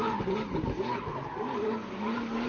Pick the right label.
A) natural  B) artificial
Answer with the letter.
A